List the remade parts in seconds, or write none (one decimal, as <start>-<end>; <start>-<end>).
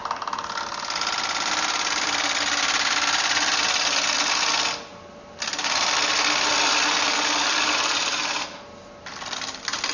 none